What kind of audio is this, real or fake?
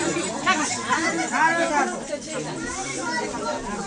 real